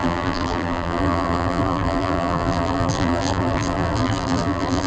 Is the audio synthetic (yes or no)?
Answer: yes